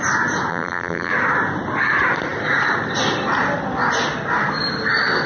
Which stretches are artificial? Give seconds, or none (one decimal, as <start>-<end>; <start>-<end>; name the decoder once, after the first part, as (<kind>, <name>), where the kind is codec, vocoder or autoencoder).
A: 0.5-1.1 (vocoder, BigVGAN v2)